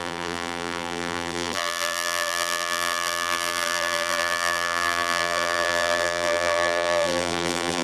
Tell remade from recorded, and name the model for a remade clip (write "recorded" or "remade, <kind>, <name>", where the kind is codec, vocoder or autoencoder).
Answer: remade, vocoder, BigVGAN v2